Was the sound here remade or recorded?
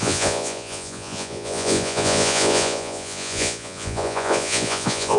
remade